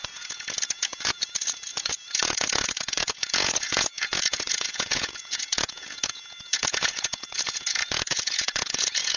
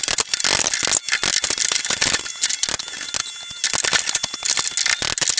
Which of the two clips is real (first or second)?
second